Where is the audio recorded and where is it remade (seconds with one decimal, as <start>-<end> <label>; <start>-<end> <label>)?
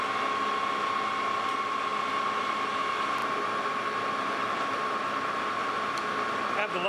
0.0-3.2 recorded; 3.2-5.7 remade; 5.7-6.9 recorded